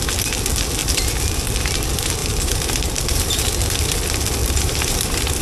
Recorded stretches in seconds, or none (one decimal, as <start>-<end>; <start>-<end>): 0.0-0.8; 1.8-2.2; 3.8-4.4